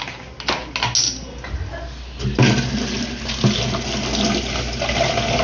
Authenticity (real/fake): real